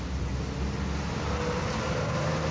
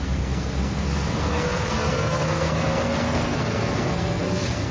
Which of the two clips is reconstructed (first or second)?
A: second